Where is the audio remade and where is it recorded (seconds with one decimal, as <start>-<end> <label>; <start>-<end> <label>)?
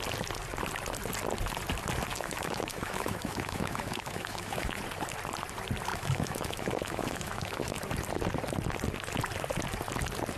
0.0-2.1 recorded; 2.1-4.8 remade; 4.8-5.9 recorded; 5.9-7.8 remade; 7.8-10.4 recorded